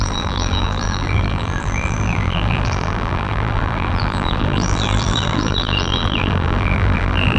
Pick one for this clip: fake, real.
fake